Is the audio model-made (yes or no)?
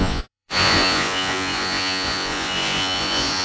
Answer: yes